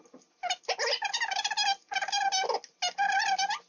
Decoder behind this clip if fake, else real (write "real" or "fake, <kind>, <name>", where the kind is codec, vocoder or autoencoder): real